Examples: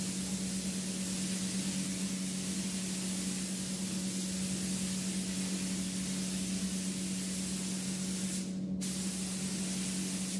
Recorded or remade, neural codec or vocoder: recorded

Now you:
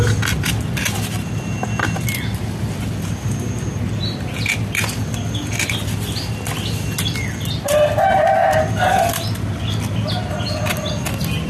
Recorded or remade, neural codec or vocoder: recorded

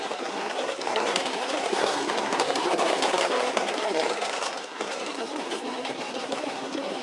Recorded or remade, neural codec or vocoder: remade, codec, SNAC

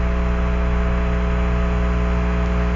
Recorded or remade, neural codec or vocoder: recorded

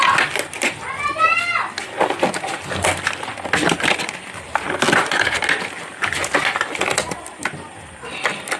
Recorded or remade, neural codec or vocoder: recorded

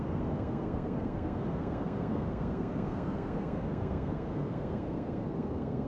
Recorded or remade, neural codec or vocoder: remade, codec, SNAC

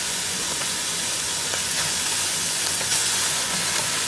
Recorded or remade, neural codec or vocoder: remade, vocoder, Vocos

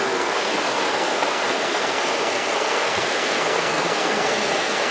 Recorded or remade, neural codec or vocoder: remade, codec, SNAC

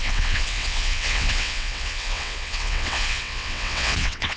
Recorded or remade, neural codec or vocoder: remade, vocoder, WaveNeXt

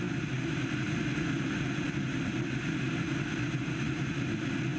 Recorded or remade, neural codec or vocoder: recorded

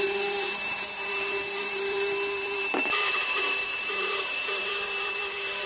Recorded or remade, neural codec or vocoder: remade, vocoder, BigVGAN v2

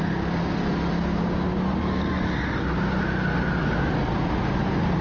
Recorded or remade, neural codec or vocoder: recorded